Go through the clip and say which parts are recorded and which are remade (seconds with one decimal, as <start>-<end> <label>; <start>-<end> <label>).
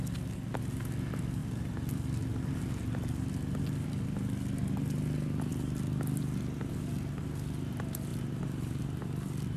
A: 0.0-1.4 recorded; 1.4-2.6 remade; 2.6-9.6 recorded